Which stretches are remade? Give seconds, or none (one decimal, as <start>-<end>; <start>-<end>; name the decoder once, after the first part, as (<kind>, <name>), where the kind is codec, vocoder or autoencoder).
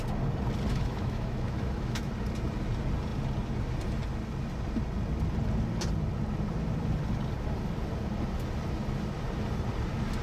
0.7-2.1 (autoencoder, DAC-VAE)